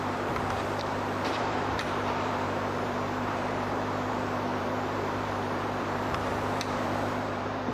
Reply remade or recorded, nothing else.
remade